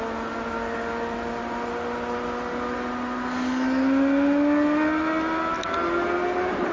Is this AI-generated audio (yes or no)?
no